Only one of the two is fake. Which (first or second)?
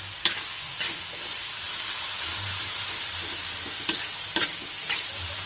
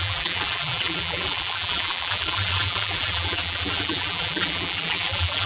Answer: second